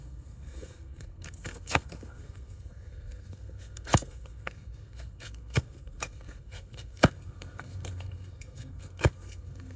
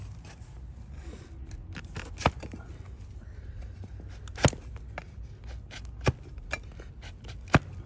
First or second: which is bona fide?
second